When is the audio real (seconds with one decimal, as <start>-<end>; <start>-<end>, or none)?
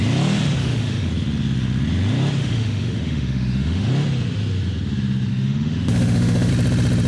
0.0-0.6; 1.1-2.4; 3.9-5.3; 6.5-7.1